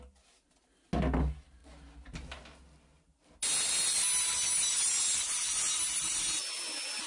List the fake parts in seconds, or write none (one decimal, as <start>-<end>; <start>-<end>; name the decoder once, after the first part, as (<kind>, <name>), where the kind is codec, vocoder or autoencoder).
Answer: none